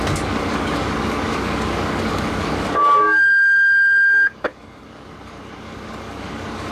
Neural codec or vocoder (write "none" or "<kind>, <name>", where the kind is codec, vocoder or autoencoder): codec, DAC